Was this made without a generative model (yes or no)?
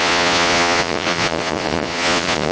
no